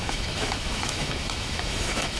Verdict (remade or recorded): remade